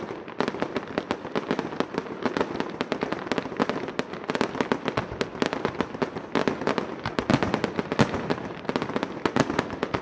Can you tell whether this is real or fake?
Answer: real